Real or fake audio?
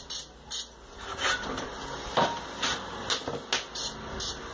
real